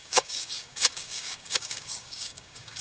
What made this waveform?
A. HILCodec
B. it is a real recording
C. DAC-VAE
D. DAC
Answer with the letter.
D